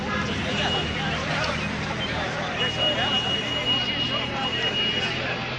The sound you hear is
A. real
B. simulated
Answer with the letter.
A